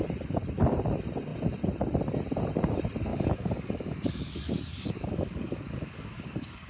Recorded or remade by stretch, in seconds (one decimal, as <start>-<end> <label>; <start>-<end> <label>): 0.0-3.1 recorded; 3.1-6.7 remade